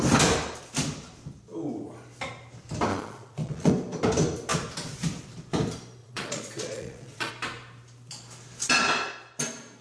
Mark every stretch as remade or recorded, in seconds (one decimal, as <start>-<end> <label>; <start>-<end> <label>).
0.0-2.9 recorded; 2.9-3.7 remade; 3.7-6.0 recorded; 6.0-7.3 remade; 7.3-9.8 recorded